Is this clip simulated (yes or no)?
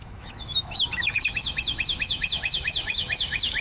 yes